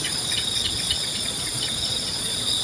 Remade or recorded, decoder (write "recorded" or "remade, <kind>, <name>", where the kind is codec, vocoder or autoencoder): remade, vocoder, Vocos